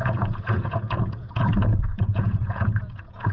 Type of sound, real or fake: fake